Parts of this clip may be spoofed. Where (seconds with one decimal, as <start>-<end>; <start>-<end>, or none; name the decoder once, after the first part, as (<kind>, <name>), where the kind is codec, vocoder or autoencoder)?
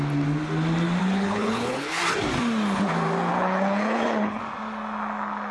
1.0-2.0 (codec, HILCodec); 3.3-4.4